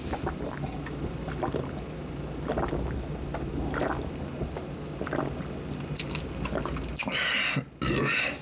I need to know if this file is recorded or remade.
recorded